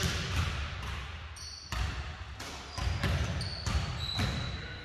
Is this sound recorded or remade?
recorded